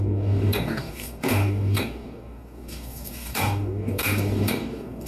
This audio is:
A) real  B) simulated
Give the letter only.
B